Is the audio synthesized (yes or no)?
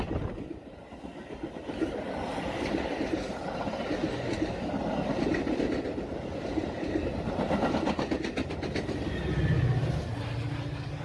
no